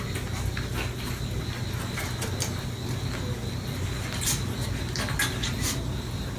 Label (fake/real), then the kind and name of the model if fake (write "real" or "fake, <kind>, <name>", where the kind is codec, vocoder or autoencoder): real